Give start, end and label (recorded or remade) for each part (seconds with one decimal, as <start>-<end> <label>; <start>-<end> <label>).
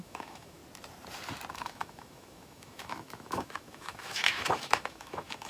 0.0-0.6 remade; 0.6-1.5 recorded; 1.5-5.5 remade